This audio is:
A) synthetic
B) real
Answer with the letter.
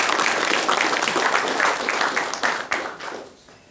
B